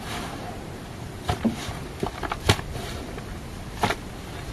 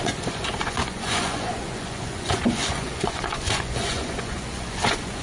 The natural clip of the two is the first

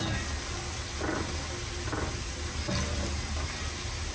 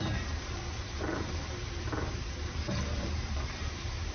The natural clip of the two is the first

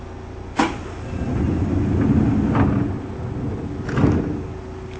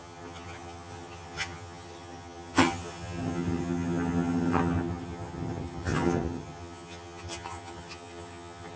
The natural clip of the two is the first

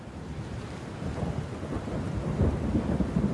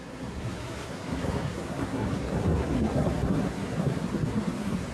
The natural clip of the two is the first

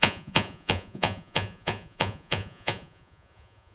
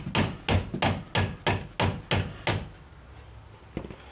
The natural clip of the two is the second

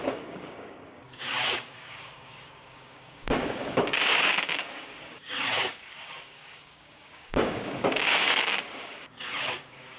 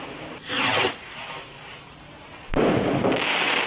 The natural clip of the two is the second